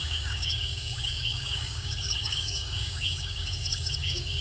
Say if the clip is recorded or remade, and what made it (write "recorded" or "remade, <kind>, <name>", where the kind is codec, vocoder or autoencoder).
remade, codec, DAC